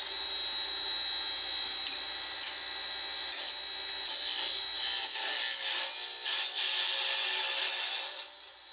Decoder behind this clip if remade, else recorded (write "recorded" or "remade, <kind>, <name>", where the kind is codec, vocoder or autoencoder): recorded